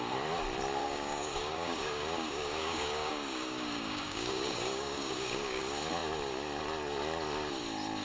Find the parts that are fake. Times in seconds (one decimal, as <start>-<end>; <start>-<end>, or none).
0.8-5.6